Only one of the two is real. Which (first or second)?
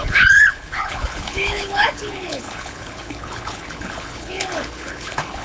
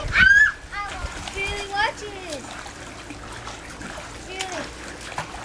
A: second